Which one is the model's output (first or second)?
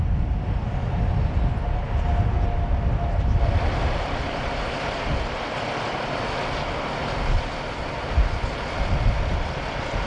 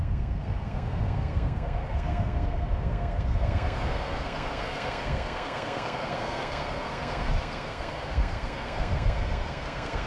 second